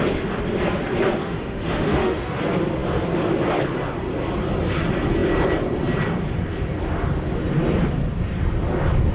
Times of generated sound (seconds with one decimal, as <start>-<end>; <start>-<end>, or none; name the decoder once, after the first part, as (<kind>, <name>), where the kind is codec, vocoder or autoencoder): 1.2-2.4 (autoencoder, DAC-VAE)